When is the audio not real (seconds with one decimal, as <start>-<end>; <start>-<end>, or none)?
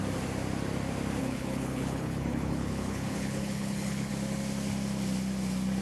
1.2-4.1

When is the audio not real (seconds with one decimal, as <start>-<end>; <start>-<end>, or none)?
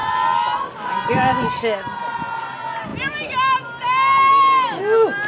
none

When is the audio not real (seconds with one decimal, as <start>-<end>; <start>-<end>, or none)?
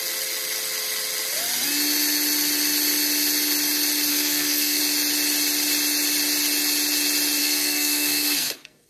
4.1-4.8; 7.4-8.9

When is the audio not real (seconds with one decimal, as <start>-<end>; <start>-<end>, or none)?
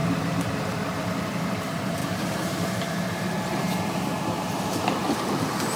0.0-0.8; 2.0-5.8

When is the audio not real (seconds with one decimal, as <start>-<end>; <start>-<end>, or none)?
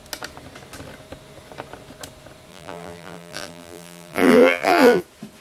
2.5-5.0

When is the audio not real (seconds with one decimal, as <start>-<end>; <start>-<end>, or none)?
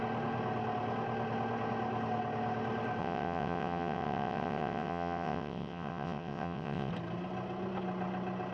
3.0-6.9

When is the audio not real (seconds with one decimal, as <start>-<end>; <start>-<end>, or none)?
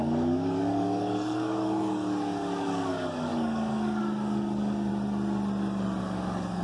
0.0-4.9; 6.0-6.6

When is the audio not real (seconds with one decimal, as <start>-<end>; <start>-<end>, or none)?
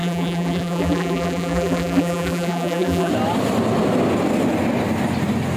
0.0-3.1